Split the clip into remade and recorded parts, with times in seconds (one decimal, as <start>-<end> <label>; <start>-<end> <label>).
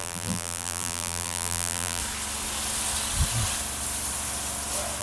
0.0-2.0 remade; 2.0-5.0 recorded